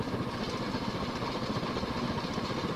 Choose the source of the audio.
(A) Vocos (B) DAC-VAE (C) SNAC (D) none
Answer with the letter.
D